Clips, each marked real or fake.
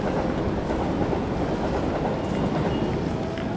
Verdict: real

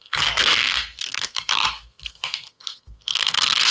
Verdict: fake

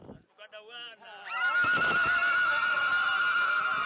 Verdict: real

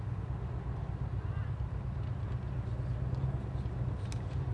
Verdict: real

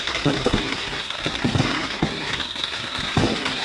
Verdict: fake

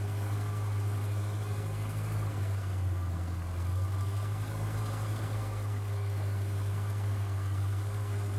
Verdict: fake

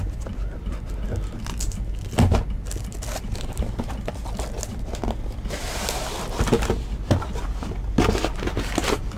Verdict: real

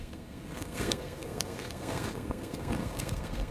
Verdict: fake